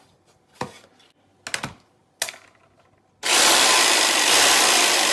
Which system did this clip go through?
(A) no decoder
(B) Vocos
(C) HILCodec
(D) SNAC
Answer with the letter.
A